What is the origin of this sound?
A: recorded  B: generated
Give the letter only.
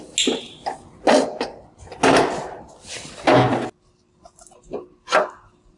A